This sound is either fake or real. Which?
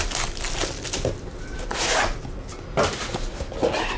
real